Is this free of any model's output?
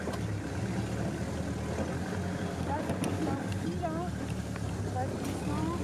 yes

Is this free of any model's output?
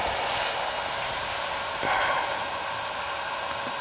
yes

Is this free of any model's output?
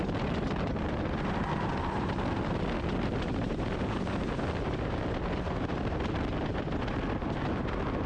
yes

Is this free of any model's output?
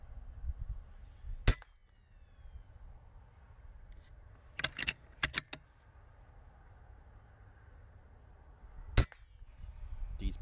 yes